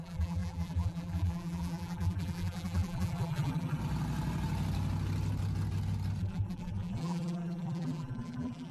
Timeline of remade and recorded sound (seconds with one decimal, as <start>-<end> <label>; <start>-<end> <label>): 0.0-3.8 remade; 3.8-6.2 recorded; 6.2-8.7 remade